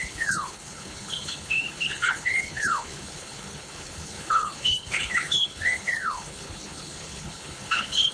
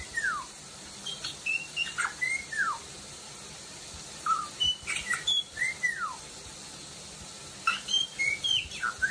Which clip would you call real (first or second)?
second